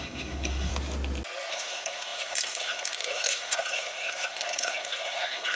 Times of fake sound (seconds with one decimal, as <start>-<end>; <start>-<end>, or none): 0.0-0.7; 1.5-5.6